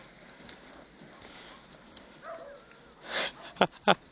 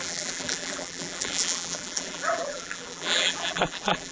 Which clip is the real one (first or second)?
first